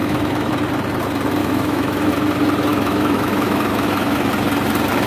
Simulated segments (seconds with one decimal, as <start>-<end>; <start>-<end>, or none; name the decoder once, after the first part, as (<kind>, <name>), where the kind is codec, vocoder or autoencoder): 0.0-0.5 (autoencoder, DAC-VAE); 1.4-2.1; 2.7-4.3

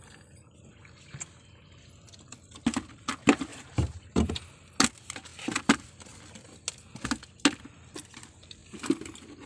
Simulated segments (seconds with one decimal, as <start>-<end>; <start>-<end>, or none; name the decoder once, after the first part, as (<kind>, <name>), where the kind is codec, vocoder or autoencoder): 3.5-4.3 (vocoder, BigVGAN v2)

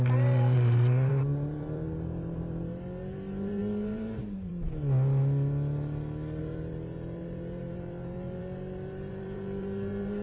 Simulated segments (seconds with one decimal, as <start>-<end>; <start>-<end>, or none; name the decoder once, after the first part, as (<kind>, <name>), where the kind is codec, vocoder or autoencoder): 0.0-4.5 (vocoder, BigVGAN v2); 6.4-10.2

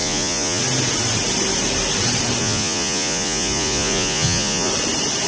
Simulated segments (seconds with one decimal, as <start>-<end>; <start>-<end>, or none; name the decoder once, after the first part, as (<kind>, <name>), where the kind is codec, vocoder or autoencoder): 0.0-0.6 (vocoder, Vocos); 2.4-4.7

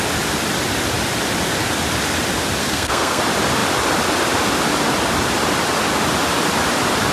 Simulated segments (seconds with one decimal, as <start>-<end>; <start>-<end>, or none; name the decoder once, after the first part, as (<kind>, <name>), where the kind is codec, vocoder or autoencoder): 2.6-3.2 (codec, SNAC)

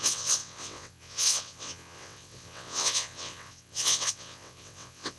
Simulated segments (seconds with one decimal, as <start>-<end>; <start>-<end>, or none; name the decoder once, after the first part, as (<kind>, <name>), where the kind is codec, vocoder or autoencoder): 0.0-5.2 (vocoder, WaveNeXt)

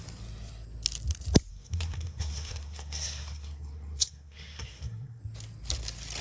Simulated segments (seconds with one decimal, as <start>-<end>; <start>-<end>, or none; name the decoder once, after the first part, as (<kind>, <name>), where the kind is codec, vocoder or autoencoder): 1.5-5.2 (codec, SNAC)

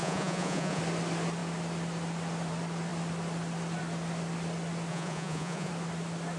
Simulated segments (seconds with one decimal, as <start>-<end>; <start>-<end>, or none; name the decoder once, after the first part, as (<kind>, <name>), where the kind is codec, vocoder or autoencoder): 0.0-0.8 (vocoder, Vocos); 4.9-5.7